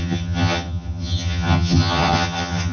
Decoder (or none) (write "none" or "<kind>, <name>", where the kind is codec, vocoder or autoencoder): vocoder, HiFi-GAN